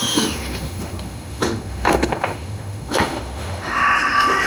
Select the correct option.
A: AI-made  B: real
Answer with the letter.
A